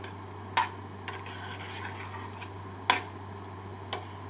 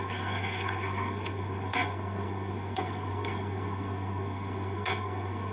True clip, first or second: first